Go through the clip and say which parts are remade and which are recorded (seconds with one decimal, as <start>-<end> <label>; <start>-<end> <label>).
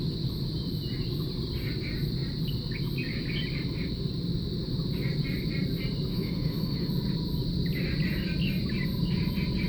0.0-6.1 recorded; 6.1-6.9 remade; 6.9-9.7 recorded